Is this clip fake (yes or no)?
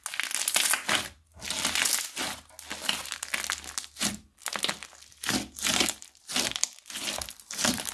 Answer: no